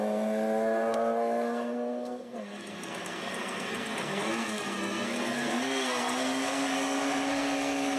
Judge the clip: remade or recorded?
remade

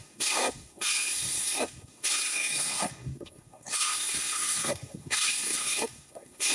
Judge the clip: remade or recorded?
remade